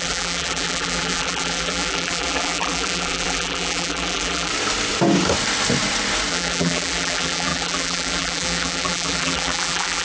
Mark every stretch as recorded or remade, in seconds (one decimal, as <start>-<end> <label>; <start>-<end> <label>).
0.0-4.5 remade; 4.5-6.3 recorded; 6.3-10.0 remade